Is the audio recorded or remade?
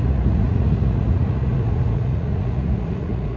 remade